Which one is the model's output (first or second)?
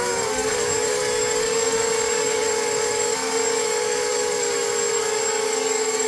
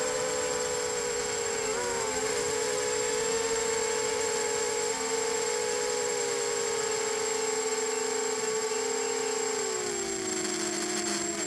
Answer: first